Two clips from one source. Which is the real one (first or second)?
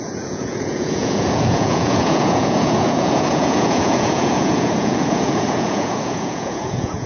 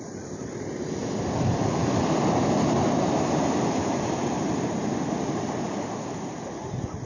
second